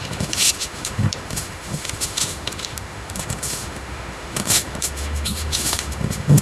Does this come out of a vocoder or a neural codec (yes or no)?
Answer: yes